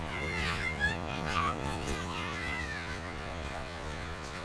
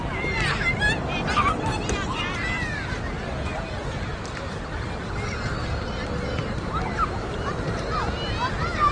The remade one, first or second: first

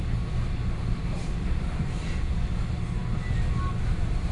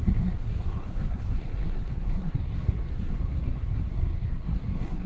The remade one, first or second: second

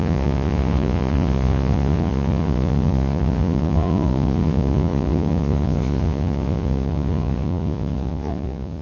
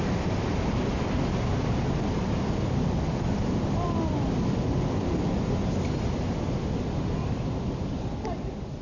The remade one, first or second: first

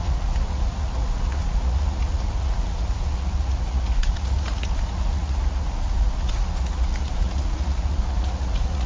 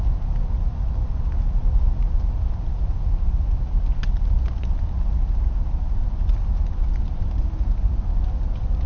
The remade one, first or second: first